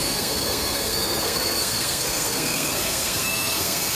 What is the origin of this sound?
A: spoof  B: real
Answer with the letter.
A